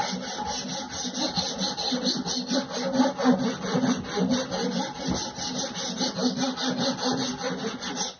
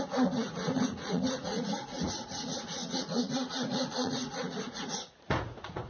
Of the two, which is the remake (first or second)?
second